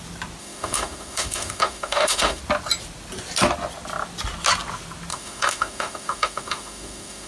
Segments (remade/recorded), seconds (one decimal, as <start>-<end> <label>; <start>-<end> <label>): 0.0-0.4 recorded; 0.4-2.4 remade; 2.4-5.1 recorded; 5.1-7.3 remade